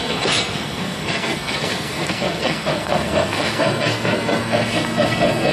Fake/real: fake